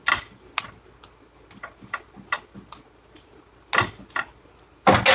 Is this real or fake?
real